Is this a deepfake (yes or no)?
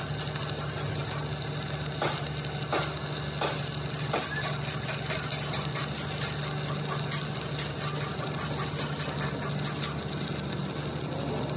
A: no